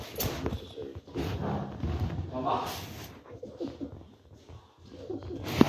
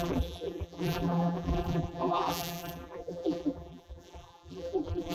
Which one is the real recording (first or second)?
first